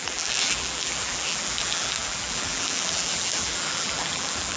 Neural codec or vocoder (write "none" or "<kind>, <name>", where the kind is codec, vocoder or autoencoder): vocoder, BigVGAN v2